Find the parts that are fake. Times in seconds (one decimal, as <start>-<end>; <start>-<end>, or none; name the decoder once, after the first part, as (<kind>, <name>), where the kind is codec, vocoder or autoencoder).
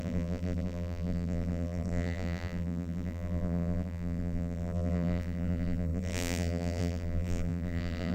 0.0-8.1 (vocoder, BigVGAN v2)